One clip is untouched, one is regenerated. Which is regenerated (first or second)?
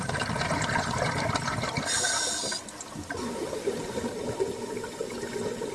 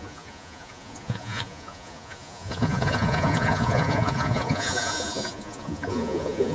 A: second